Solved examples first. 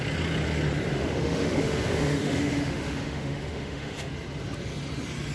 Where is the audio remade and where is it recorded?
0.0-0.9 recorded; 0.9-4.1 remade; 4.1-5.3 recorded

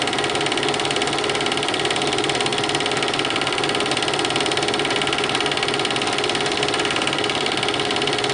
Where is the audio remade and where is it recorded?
0.0-8.3 recorded

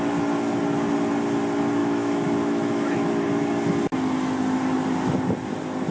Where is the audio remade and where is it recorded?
0.0-1.8 recorded; 1.8-3.1 remade; 3.1-5.9 recorded

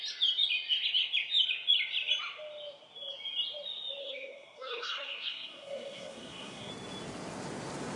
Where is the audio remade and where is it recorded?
0.0-4.0 recorded; 4.0-6.7 remade; 6.7-8.0 recorded

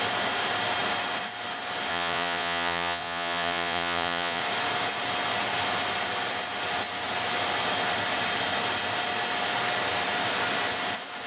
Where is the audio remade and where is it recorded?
0.0-1.9 recorded; 1.9-4.4 remade; 4.4-11.3 recorded